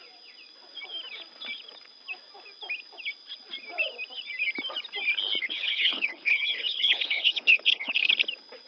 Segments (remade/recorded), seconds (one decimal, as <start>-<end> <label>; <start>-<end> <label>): 0.0-5.4 recorded; 5.4-8.1 remade; 8.1-8.7 recorded